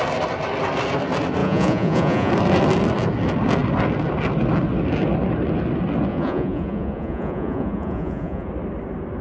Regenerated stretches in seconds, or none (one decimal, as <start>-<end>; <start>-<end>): 1.4-2.3; 6.1-8.5